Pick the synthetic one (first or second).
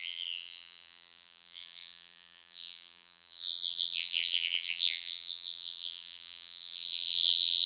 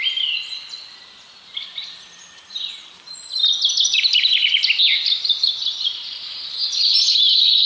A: first